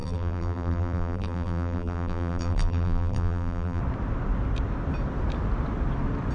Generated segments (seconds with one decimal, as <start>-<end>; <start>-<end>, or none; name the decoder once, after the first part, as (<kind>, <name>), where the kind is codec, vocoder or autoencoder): 0.0-3.8 (vocoder, BigVGAN v2)